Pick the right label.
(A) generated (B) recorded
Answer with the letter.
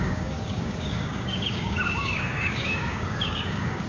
A